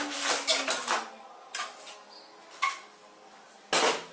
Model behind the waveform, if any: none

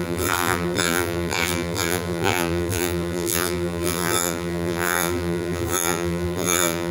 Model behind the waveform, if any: vocoder, BigVGAN v2